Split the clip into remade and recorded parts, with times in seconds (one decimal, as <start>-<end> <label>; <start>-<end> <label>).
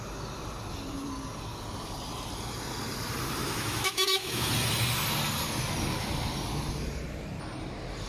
0.0-3.4 recorded; 3.4-4.5 remade; 4.5-8.1 recorded